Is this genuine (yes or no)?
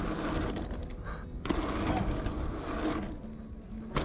yes